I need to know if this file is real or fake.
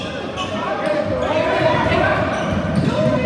real